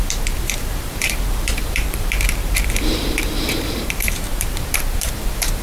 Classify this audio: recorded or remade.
remade